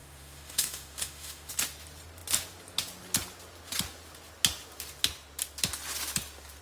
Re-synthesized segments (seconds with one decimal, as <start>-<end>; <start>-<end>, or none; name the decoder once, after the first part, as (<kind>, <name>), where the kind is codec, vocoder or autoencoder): 0.0-1.5 (autoencoder, DAC-VAE)